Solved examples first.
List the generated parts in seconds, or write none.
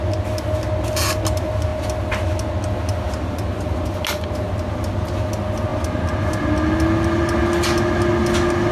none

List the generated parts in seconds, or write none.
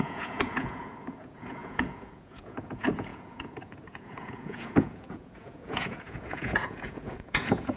0.0-7.8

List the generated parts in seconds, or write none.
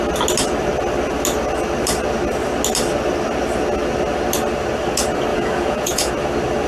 5.3-6.1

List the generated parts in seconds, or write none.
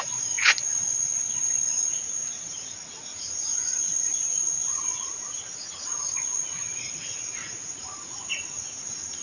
0.0-9.2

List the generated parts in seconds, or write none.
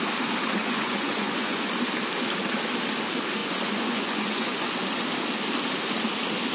0.6-1.7; 3.4-4.7